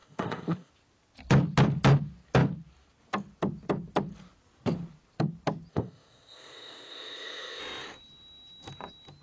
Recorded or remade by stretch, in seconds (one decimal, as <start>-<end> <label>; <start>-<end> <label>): 0.0-0.7 remade; 0.7-5.7 recorded; 5.7-7.6 remade; 7.6-9.2 recorded